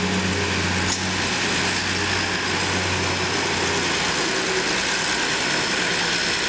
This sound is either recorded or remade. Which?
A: recorded